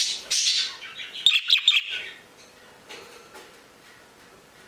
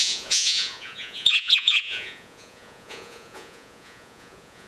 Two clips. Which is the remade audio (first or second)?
second